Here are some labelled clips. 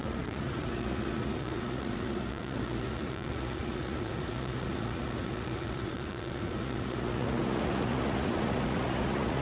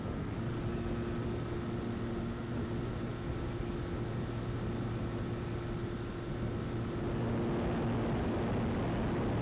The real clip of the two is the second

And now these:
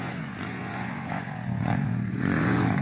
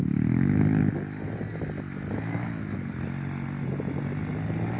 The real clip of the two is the second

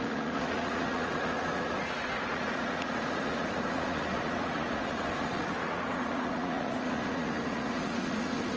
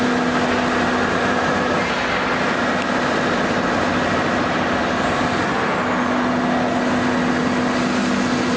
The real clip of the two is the second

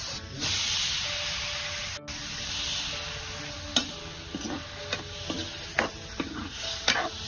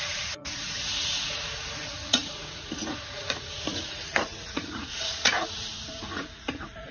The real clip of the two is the first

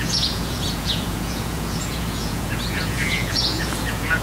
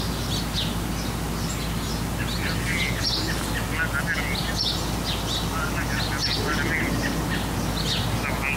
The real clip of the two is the second